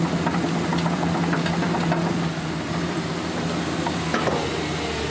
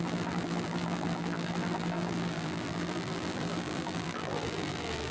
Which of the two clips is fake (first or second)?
second